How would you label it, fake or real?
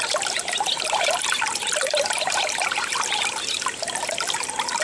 real